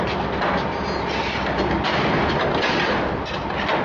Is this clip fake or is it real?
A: real